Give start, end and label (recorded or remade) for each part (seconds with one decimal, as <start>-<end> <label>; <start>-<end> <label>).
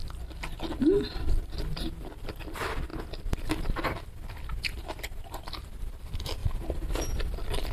0.0-0.9 recorded; 0.9-6.4 remade; 6.4-7.2 recorded; 7.2-7.7 remade